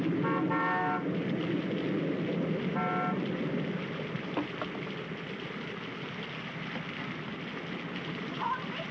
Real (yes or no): yes